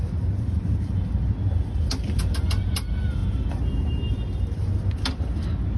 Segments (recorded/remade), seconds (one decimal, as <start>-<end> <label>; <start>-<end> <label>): 0.0-5.8 recorded